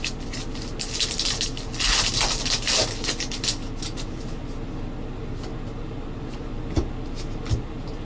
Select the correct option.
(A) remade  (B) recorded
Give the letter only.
B